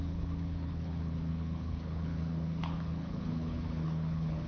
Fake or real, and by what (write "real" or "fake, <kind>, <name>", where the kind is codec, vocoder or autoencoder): fake, codec, HILCodec